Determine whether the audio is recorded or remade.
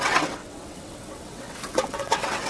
remade